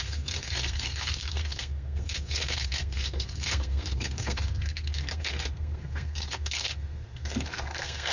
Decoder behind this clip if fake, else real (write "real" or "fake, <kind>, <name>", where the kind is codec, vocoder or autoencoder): fake, codec, SNAC